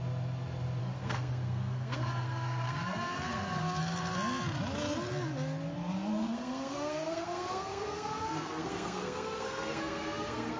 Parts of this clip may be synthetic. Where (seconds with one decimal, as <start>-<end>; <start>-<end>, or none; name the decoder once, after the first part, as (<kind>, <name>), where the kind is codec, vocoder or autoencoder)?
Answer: 0.8-3.8 (codec, SNAC); 6.2-10.6